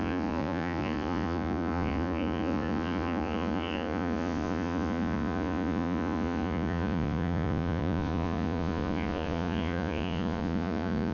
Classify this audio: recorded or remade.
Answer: remade